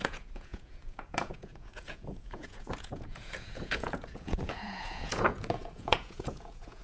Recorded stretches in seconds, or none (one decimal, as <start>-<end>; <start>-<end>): none

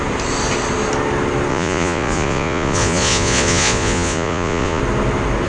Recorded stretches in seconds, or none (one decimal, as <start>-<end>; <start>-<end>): 0.0-1.5; 4.8-5.5

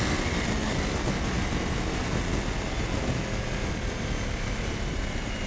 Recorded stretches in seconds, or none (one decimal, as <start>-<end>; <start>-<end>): 0.0-5.5

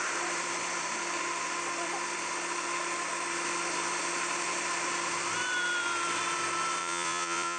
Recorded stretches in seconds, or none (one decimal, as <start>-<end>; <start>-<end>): 0.0-6.8

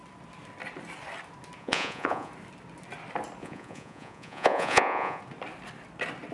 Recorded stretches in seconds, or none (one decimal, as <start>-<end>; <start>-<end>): 0.0-1.6; 2.3-3.4; 5.2-6.3

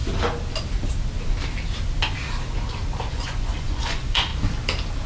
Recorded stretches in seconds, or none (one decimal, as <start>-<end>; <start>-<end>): 0.0-3.1; 4.3-5.1

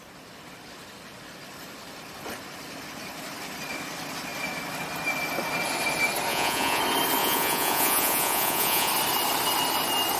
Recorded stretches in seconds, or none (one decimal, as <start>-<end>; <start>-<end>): 0.0-6.3; 6.8-7.2; 8.9-10.2

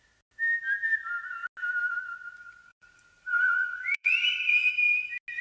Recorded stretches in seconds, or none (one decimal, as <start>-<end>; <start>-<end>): 0.0-2.7; 4.7-5.4